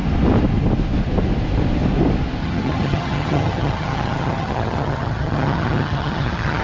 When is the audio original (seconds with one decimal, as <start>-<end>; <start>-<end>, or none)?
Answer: 0.0-2.4